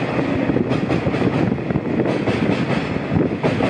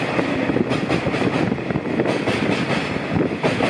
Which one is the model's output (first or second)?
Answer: second